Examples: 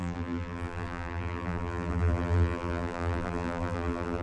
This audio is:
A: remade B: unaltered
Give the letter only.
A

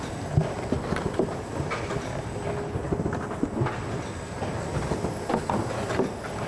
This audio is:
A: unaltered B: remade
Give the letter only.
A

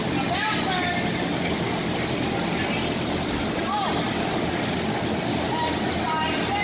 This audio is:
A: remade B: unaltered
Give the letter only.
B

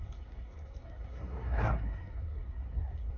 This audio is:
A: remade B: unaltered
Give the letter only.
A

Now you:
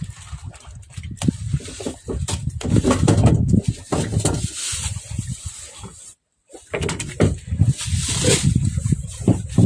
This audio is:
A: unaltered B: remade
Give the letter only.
A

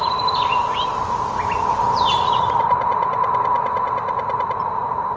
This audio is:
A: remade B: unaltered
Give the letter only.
B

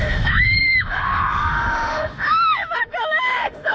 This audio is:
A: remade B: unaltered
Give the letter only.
A